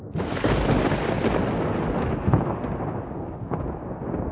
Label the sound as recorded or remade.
recorded